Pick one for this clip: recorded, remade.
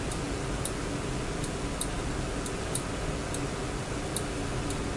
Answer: recorded